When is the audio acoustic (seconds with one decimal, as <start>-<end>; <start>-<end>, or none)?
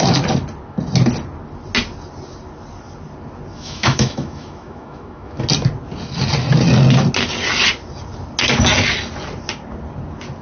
0.0-3.5; 5.4-10.4